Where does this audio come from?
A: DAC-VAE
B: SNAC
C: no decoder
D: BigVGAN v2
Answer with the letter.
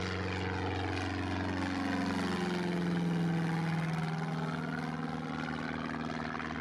C